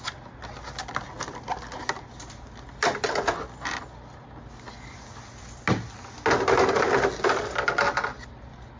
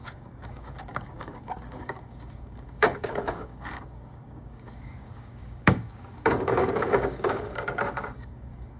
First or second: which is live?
first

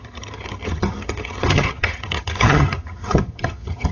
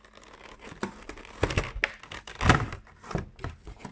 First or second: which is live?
second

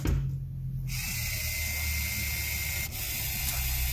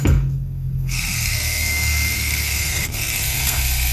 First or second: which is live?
first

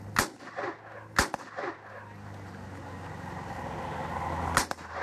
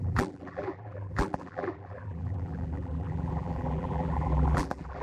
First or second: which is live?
first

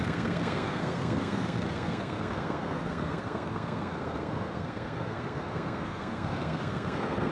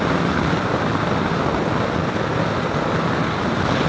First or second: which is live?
second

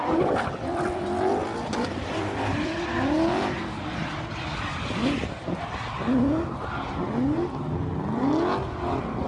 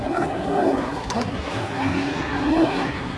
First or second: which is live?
first